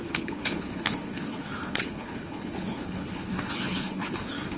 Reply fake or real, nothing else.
fake